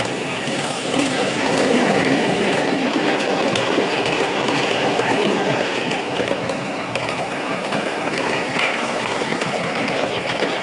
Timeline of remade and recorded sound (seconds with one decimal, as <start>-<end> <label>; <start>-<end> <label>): 0.0-10.6 remade